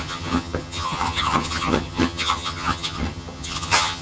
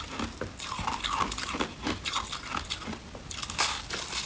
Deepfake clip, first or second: first